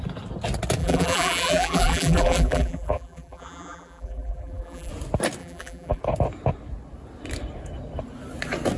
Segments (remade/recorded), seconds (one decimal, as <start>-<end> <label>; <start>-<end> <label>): 0.0-0.8 recorded; 0.8-4.9 remade; 4.9-5.4 recorded; 5.4-6.0 remade; 6.0-8.8 recorded